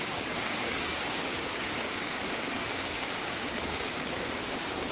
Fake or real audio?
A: fake